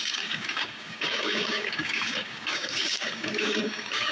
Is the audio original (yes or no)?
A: no